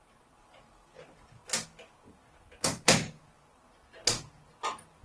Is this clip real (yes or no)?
yes